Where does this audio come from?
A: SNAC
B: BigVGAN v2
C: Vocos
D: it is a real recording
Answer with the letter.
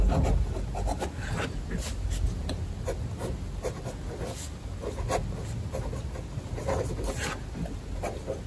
D